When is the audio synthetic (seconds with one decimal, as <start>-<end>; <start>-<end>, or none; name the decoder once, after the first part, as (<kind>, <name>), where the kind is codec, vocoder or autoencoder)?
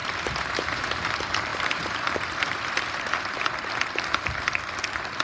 0.0-1.1 (vocoder, BigVGAN v2); 1.5-3.4